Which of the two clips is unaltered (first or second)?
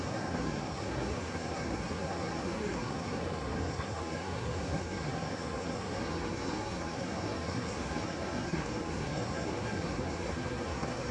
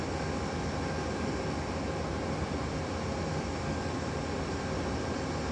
second